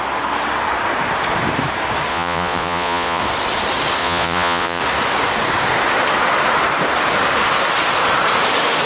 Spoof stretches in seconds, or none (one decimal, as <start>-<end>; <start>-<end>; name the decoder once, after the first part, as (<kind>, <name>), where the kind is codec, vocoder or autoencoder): 2.1-3.2 (vocoder, Vocos); 4.0-4.8